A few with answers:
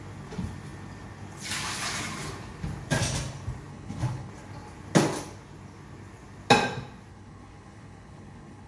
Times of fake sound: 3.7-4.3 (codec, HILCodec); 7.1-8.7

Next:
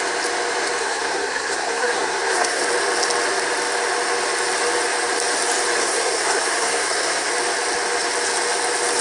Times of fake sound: 0.8-2.6 (codec, SNAC); 5.8-7.3